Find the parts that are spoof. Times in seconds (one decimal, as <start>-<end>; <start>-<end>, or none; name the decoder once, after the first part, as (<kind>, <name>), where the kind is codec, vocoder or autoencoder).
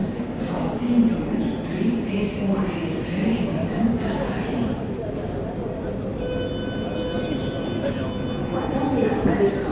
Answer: 0.0-0.7 (codec, DAC); 3.2-4.3